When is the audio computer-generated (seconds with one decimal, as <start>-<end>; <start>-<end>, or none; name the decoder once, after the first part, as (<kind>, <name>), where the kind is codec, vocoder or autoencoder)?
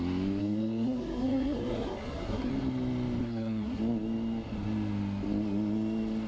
0.4-2.5 (codec, SNAC); 3.2-3.8